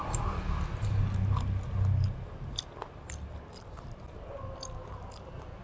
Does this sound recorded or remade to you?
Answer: recorded